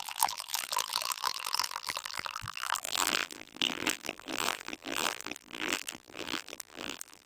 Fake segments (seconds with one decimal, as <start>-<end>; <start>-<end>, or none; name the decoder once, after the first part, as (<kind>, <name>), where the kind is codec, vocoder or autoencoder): 0.0-7.3 (vocoder, BigVGAN v2)